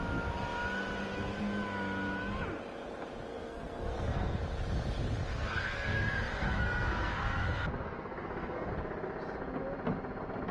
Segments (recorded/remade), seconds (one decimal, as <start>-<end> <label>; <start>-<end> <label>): 0.0-3.3 recorded; 3.3-4.4 remade; 4.4-5.3 recorded; 5.3-8.7 remade; 8.7-10.5 recorded